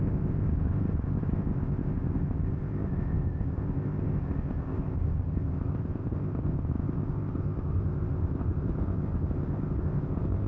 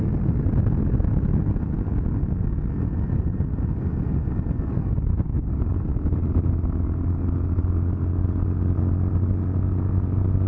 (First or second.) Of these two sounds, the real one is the second